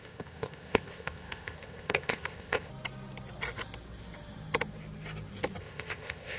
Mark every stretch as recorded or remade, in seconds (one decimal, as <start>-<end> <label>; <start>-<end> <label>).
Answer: 0.0-2.7 remade; 2.7-5.6 recorded; 5.6-6.4 remade